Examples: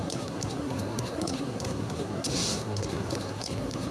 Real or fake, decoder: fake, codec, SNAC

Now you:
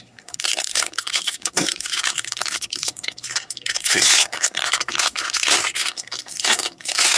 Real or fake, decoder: fake, codec, SNAC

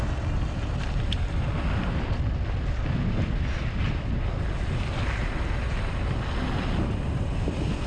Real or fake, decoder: real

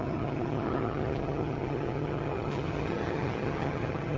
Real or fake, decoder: fake, vocoder, HiFi-GAN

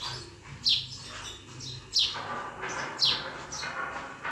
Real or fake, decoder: real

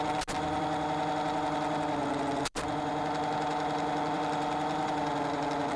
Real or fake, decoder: fake, vocoder, BigVGAN v2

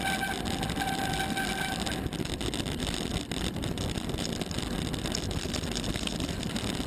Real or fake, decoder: real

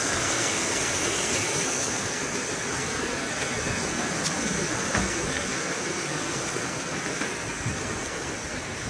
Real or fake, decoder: fake, codec, SNAC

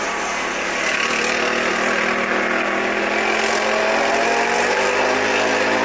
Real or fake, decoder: real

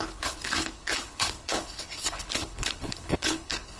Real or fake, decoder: fake, codec, HILCodec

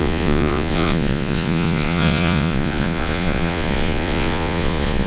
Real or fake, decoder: fake, vocoder, Vocos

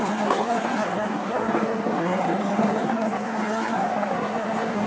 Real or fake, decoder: fake, codec, SNAC